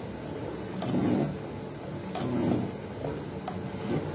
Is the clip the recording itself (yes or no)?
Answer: yes